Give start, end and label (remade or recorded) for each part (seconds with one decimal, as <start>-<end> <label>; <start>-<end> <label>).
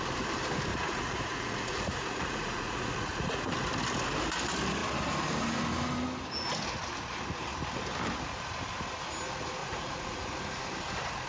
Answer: 0.0-0.7 recorded; 0.7-3.5 remade; 3.5-9.6 recorded; 9.6-10.6 remade; 10.6-11.3 recorded